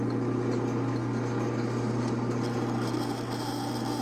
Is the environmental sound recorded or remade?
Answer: recorded